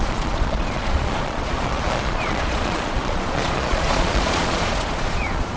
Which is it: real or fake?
fake